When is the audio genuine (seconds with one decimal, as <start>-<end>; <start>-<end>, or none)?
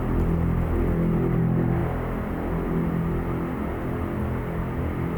0.0-5.2